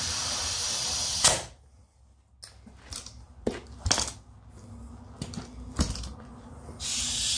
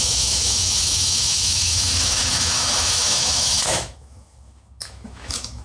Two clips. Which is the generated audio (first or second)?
second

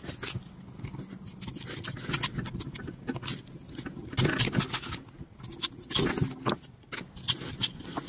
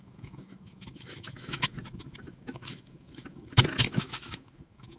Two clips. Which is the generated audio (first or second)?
second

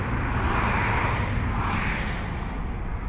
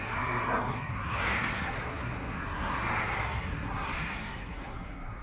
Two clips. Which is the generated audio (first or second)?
second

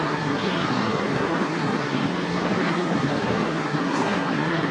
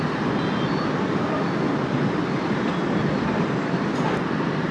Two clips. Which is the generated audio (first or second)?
first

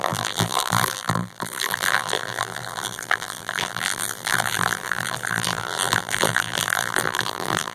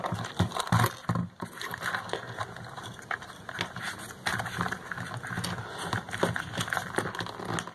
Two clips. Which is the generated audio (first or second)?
first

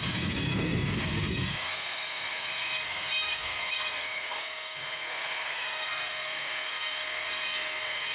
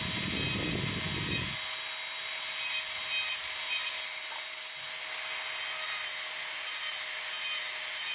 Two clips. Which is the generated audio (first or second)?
first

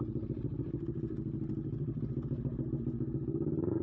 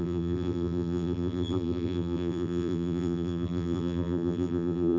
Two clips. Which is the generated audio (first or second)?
second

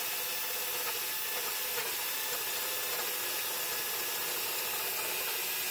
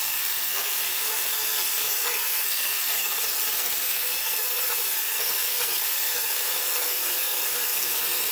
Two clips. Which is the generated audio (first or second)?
second